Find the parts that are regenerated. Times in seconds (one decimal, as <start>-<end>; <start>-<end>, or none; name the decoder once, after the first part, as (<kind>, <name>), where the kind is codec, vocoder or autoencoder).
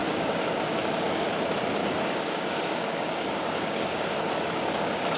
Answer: 0.0-1.3 (codec, DAC); 1.8-5.2